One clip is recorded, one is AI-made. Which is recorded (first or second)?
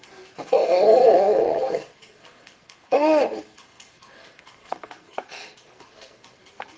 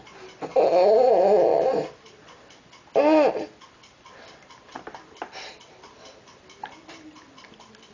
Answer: second